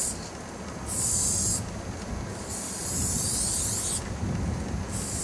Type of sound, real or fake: real